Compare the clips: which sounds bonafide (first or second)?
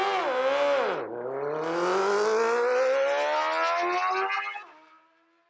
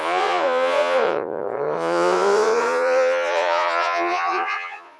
first